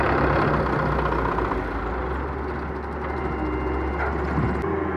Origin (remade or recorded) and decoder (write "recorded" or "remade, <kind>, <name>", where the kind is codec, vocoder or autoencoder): recorded